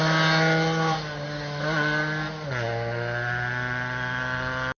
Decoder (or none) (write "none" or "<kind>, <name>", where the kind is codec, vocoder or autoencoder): none